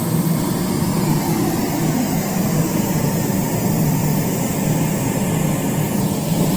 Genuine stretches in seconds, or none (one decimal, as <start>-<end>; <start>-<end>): 0.0-0.9; 3.2-6.6